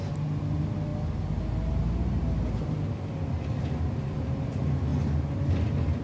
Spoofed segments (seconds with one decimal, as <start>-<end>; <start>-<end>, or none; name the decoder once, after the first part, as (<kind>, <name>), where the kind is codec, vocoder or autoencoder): none